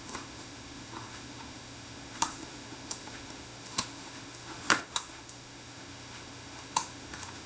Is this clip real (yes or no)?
no